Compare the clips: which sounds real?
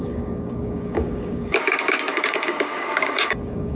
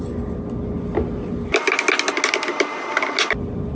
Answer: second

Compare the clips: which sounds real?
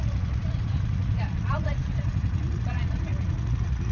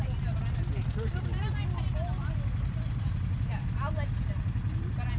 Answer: second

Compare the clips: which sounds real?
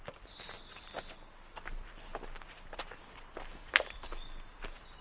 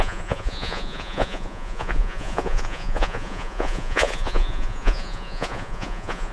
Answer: first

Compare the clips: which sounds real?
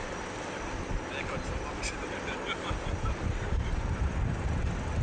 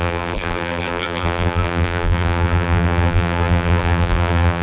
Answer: first